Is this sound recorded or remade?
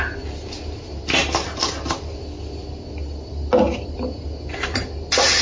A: recorded